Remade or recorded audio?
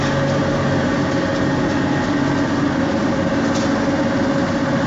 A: recorded